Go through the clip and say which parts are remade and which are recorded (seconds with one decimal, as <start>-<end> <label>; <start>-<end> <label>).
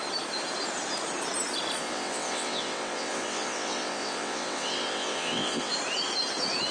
0.0-1.8 recorded; 1.8-5.7 remade; 5.7-6.7 recorded